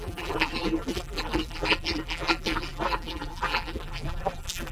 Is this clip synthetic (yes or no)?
yes